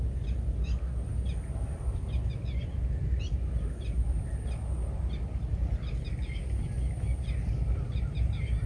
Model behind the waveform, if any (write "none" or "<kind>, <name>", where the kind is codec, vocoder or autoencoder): none